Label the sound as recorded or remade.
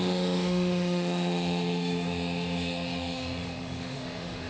remade